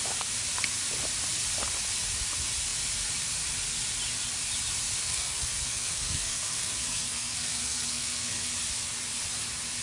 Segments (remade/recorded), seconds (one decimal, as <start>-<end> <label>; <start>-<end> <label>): 0.0-5.0 recorded; 5.0-8.5 remade; 8.5-9.8 recorded